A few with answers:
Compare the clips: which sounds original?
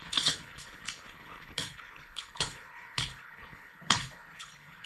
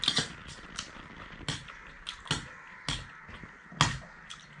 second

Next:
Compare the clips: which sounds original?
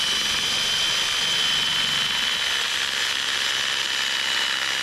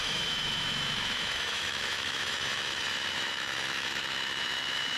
first